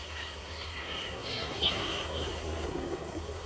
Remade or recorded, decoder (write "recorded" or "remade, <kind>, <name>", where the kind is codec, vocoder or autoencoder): remade, codec, SNAC